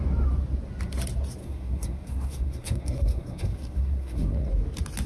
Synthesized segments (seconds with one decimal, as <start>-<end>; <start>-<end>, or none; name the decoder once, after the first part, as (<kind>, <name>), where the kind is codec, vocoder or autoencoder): 1.4-4.5 (codec, SNAC)